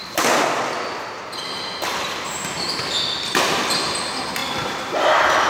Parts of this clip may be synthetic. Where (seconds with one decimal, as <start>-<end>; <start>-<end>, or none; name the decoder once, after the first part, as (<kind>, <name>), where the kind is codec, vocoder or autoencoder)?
none